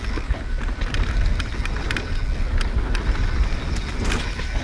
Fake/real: real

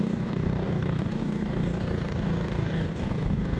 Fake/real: fake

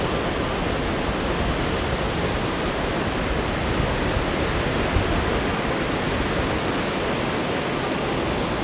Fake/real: real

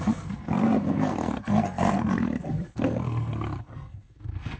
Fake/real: fake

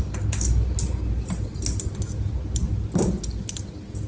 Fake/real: real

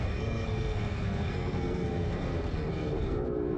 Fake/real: fake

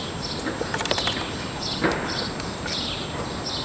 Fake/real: real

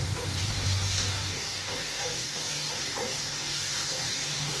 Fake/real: fake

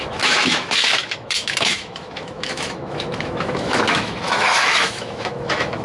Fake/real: fake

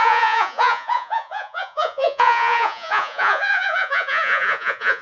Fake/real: fake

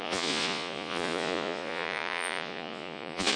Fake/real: fake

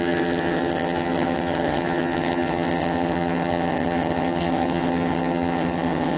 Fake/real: fake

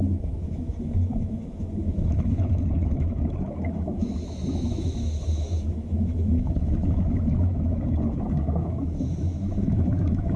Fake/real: fake